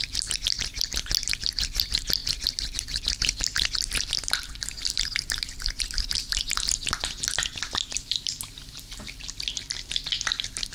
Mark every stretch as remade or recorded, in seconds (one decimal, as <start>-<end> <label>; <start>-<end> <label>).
0.0-10.7 recorded